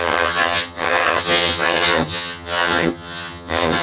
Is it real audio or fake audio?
fake